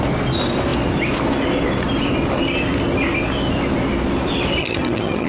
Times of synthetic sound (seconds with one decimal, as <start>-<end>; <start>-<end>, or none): 4.6-5.3